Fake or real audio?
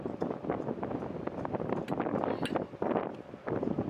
real